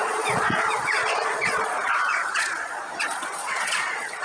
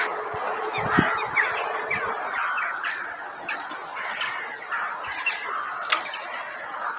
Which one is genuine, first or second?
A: second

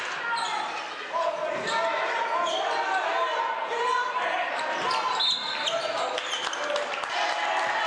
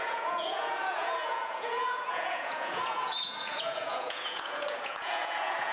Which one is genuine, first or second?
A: first